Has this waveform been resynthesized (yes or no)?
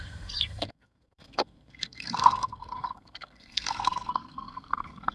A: yes